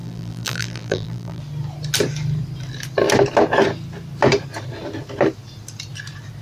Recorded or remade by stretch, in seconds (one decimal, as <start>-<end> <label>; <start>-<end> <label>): 0.0-1.4 remade; 1.4-6.4 recorded